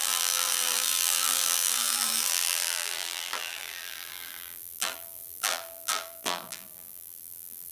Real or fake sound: fake